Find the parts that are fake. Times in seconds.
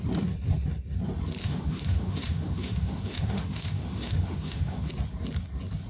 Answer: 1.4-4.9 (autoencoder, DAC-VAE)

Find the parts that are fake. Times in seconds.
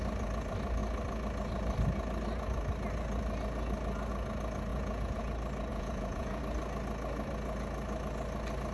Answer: 4.7-5.2 (vocoder, Vocos); 5.7-6.4